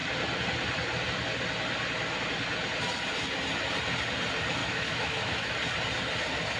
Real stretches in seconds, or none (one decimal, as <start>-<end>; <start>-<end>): 0.0-4.6; 5.5-6.6